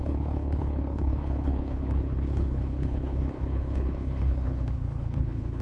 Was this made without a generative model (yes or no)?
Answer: no